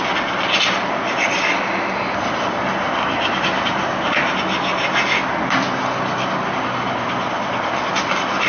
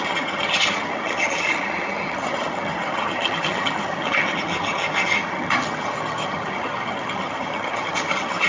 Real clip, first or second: first